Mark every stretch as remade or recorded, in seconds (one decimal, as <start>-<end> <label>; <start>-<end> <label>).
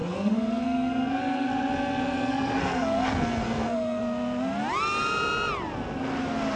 0.0-4.0 remade; 4.0-6.6 recorded